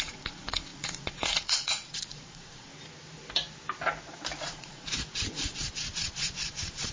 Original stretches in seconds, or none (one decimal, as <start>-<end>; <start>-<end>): 2.7-4.4